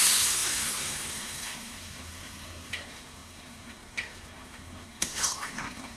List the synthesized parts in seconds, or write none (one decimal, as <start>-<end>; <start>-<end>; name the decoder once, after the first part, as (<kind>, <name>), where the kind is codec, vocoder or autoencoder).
0.0-6.0 (codec, SNAC)